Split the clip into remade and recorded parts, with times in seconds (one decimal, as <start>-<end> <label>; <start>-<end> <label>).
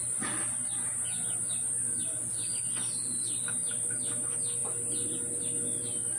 0.0-6.2 recorded